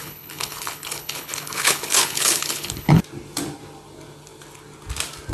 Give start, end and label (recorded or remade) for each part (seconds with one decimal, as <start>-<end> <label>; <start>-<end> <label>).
0.0-3.0 remade; 3.0-5.3 recorded